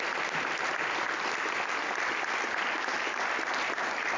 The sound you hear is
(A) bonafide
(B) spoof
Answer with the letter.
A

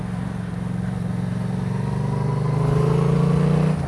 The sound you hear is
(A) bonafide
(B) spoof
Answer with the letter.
A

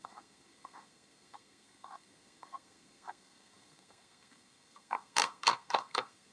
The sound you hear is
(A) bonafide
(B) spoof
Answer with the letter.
B